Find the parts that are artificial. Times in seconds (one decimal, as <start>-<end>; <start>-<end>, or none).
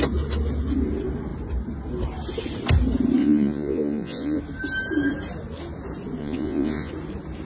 3.2-4.4; 6.2-6.9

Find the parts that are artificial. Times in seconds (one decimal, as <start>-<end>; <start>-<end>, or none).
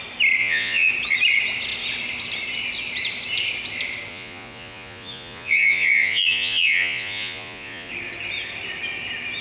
0.4-0.9; 4.1-7.9